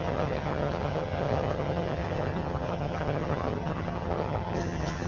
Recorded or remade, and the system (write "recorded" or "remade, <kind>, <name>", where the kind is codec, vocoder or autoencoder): remade, vocoder, HiFi-GAN